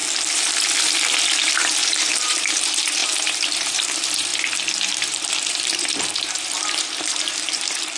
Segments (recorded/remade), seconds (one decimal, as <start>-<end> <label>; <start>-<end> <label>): 0.0-1.4 recorded; 1.4-4.3 remade; 4.3-4.9 recorded; 4.9-8.0 remade